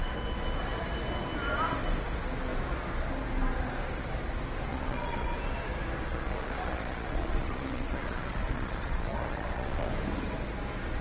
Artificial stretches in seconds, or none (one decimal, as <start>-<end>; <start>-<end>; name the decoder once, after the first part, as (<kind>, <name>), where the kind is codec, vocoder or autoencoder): 4.7-5.3 (vocoder, Vocos); 6.1-9.9